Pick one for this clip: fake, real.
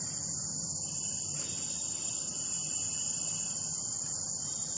real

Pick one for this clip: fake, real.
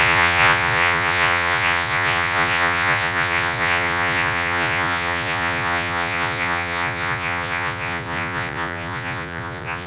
fake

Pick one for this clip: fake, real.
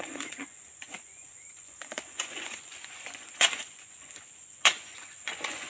fake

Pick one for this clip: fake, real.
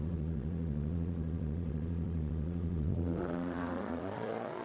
fake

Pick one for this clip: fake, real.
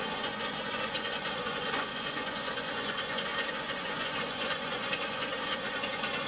fake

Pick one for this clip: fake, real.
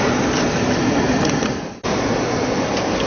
real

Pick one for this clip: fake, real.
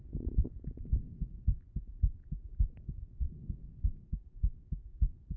real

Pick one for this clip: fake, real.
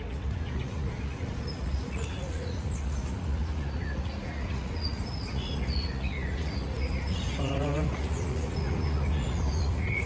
fake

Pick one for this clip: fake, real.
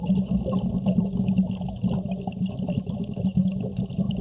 real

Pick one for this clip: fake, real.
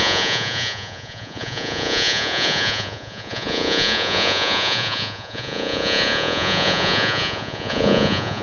fake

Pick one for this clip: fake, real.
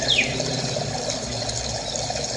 real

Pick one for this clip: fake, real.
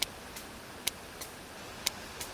real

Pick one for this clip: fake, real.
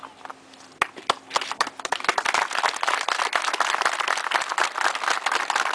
real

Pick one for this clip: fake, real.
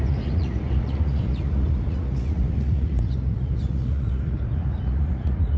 fake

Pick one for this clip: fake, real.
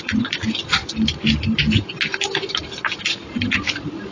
real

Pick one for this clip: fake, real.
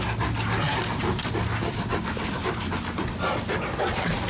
real